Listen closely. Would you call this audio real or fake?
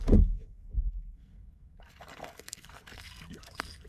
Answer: fake